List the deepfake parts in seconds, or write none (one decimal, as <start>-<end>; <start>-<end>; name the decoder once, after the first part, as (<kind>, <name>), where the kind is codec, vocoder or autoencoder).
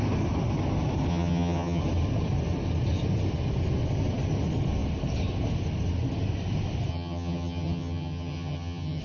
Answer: 1.1-1.8 (vocoder, HiFi-GAN); 6.9-9.0